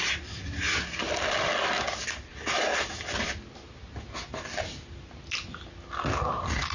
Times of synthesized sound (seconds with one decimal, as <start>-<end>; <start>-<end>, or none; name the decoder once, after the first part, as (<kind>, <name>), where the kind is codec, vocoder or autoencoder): none